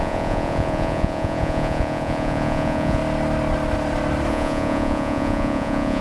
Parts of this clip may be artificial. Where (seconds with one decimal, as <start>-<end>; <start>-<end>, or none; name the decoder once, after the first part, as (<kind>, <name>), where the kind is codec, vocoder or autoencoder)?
0.0-3.0 (vocoder, Vocos); 4.3-6.0